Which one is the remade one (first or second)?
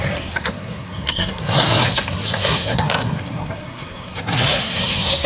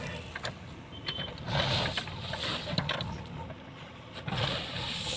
first